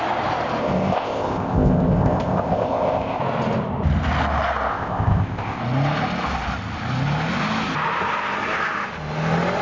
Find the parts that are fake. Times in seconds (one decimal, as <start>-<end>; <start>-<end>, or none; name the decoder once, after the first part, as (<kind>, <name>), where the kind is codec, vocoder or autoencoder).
0.6-3.2 (codec, ZipCodec); 4.7-5.6